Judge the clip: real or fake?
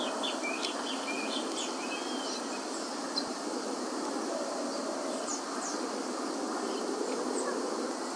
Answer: real